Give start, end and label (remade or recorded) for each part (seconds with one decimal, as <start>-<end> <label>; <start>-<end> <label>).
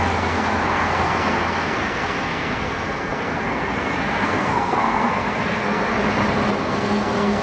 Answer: 0.0-5.9 remade; 5.9-6.6 recorded; 6.6-7.4 remade